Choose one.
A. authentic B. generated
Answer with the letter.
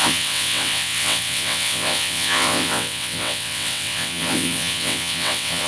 B